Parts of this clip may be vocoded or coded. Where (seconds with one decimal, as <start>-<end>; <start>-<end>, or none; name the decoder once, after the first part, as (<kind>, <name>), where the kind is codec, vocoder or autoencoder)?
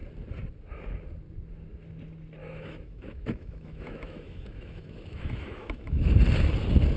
2.4-6.1 (autoencoder, DAC-VAE)